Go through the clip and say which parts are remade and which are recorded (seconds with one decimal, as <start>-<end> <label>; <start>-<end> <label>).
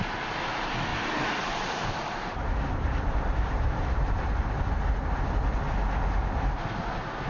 0.0-0.9 recorded; 0.9-4.4 remade; 4.4-7.3 recorded